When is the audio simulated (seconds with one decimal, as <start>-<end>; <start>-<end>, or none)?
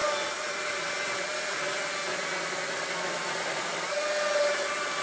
none